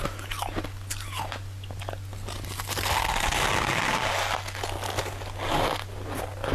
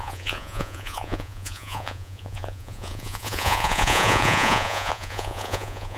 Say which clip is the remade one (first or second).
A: second